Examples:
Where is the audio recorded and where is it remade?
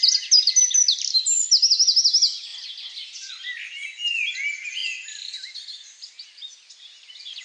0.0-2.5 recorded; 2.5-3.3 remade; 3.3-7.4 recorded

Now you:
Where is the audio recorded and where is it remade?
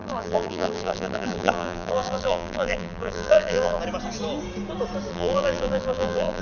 0.0-3.8 remade; 3.8-5.1 recorded; 5.1-6.4 remade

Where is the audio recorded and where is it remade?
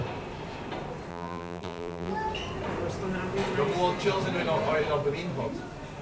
0.0-1.1 recorded; 1.1-2.1 remade; 2.1-6.0 recorded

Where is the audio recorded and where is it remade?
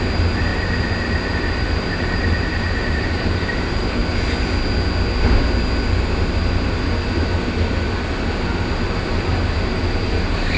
0.0-4.0 remade; 4.0-8.8 recorded; 8.8-10.6 remade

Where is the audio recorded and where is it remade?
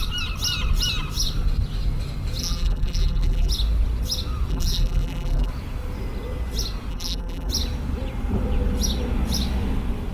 0.0-2.4 recorded; 2.4-3.5 remade; 3.5-4.5 recorded; 4.5-5.5 remade; 5.5-6.9 recorded; 6.9-7.5 remade; 7.5-10.1 recorded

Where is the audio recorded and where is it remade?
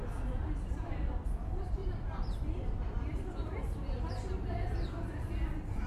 0.0-1.8 recorded; 1.8-5.3 remade; 5.3-5.9 recorded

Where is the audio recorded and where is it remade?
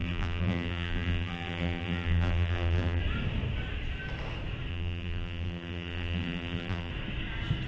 0.0-3.0 remade; 3.0-4.7 recorded; 4.7-6.9 remade; 6.9-7.7 recorded